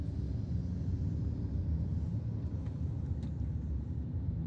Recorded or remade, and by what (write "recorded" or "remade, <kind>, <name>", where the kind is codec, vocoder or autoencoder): remade, vocoder, BigVGAN v2